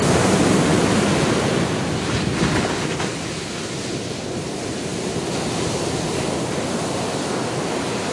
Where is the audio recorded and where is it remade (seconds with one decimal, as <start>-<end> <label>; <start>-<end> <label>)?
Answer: 0.0-8.1 recorded